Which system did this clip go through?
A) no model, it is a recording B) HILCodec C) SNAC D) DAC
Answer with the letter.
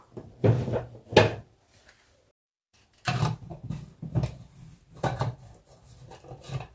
A